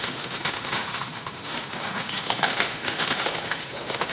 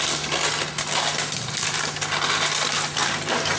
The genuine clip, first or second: second